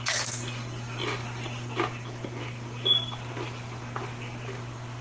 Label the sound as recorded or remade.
recorded